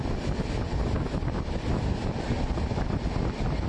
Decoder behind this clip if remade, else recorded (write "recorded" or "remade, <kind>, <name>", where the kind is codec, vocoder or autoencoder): recorded